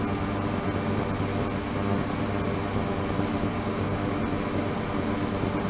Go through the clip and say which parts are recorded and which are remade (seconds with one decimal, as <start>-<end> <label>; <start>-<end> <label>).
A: 0.0-3.5 recorded; 3.5-4.1 remade; 4.1-5.7 recorded